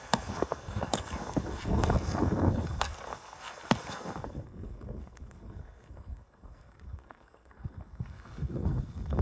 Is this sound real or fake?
fake